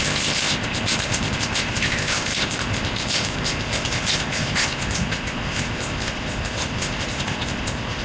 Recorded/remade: remade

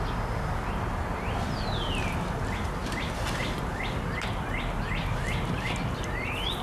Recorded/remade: recorded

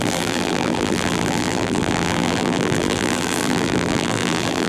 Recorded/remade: remade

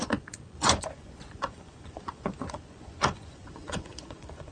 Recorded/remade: remade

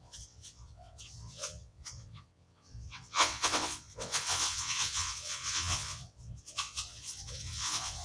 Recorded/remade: remade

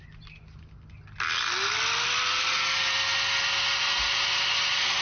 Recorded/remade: recorded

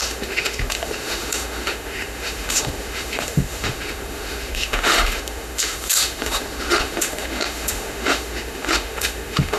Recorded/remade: remade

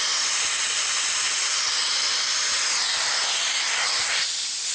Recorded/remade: recorded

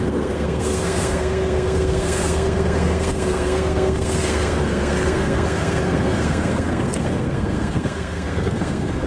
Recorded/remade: remade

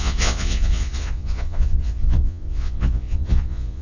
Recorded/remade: remade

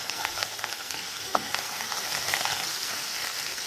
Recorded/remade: remade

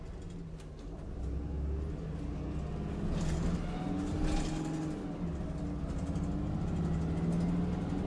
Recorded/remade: recorded